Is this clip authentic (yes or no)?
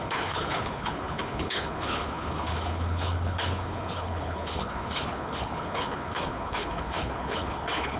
no